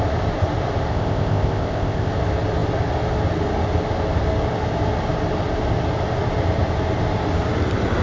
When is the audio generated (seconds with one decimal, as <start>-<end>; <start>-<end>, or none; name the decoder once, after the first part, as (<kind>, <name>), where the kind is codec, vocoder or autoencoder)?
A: 0.9-2.1 (codec, ZipCodec)